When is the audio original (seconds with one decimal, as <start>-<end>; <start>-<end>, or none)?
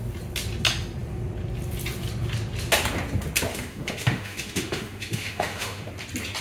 0.0-3.5; 5.9-6.4